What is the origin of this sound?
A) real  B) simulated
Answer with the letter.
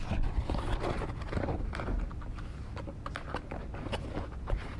A